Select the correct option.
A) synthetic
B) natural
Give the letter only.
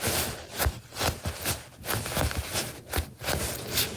B